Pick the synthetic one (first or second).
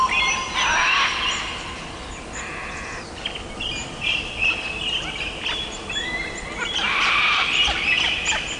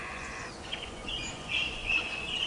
second